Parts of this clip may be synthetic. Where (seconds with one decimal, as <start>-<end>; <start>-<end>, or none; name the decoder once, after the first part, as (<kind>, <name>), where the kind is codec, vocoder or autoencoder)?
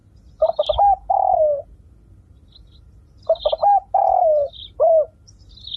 none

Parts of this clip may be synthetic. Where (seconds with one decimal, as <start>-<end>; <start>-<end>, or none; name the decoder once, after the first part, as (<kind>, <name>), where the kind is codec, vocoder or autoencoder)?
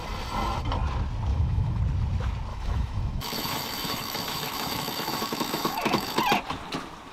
1.3-1.8 (autoencoder, DAC-VAE); 2.5-6.2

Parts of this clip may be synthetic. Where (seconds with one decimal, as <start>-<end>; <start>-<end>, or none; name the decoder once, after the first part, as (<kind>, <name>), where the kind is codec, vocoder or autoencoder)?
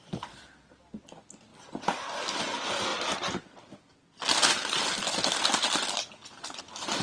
none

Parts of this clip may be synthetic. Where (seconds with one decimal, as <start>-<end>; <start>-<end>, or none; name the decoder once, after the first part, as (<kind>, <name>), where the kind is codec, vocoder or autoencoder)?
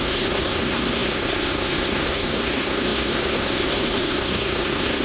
0.0-5.0 (codec, SNAC)